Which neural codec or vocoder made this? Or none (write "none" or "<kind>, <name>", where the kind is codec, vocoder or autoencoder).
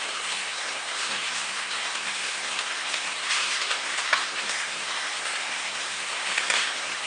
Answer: codec, SNAC